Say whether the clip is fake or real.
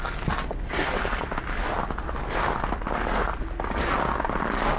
real